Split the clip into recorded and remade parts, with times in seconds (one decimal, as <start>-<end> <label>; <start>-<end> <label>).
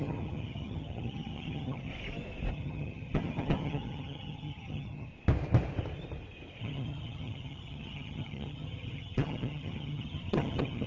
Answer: 0.0-1.9 remade; 1.9-2.5 recorded; 2.5-5.1 remade; 5.1-6.6 recorded; 6.6-10.9 remade